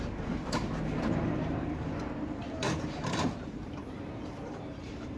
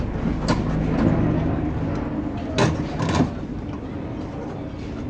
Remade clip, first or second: first